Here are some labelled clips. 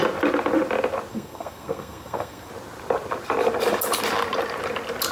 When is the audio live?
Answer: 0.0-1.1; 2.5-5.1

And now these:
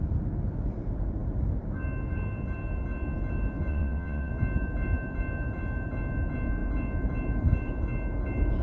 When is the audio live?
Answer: 0.0-3.7; 4.3-8.6

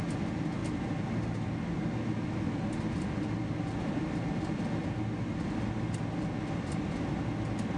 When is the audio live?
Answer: 0.0-7.8

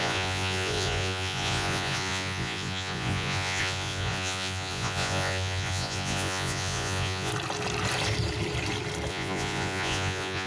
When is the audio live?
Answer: 7.3-9.1